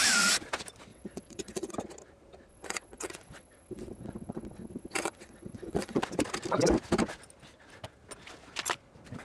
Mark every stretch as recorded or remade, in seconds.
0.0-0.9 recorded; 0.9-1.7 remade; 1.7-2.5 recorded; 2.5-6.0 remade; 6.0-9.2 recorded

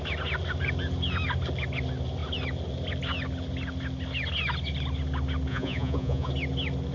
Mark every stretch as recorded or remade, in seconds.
0.0-5.5 recorded; 5.5-6.3 remade; 6.3-6.9 recorded

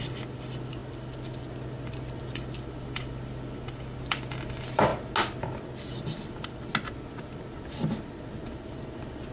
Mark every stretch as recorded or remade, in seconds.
0.0-4.9 remade; 4.9-5.9 recorded; 5.9-6.7 remade; 6.7-8.5 recorded; 8.5-9.3 remade

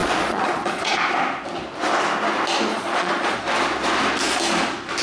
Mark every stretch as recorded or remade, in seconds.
0.0-0.9 remade; 0.9-2.7 recorded; 2.7-3.4 remade; 3.4-5.0 recorded

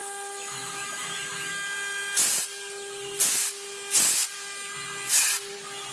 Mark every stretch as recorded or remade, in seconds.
0.0-1.5 remade; 1.5-5.9 recorded

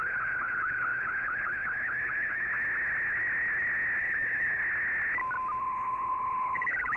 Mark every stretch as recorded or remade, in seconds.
0.0-2.5 remade; 2.5-4.0 recorded; 4.0-4.6 remade; 4.6-5.6 recorded; 5.6-7.0 remade